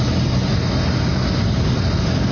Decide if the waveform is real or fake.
real